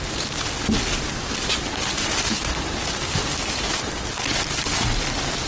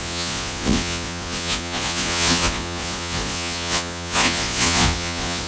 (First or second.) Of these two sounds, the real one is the first